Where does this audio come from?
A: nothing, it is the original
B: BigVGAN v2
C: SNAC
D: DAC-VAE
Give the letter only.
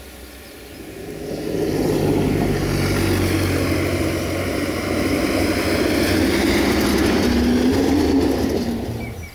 A